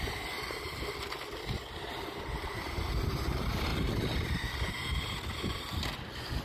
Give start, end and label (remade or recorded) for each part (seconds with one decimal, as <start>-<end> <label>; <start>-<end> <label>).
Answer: 0.0-6.4 recorded